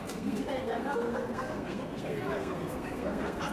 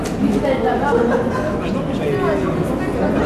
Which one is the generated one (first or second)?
first